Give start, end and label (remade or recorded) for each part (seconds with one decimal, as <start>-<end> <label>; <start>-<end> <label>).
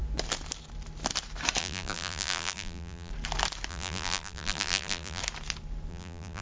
0.0-1.6 recorded; 1.6-3.1 remade; 3.1-3.7 recorded; 3.7-5.2 remade; 5.2-5.9 recorded; 5.9-6.4 remade